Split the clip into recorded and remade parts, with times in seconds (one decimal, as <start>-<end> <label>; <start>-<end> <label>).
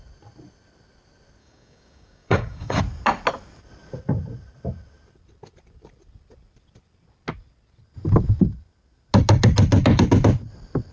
0.0-1.4 recorded; 1.4-2.8 remade; 2.8-10.9 recorded